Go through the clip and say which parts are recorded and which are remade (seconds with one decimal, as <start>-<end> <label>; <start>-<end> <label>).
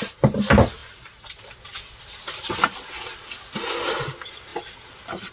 0.0-5.3 recorded